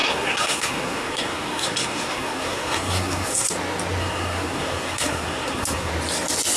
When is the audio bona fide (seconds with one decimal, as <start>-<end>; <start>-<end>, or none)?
3.5-4.0; 5.9-6.6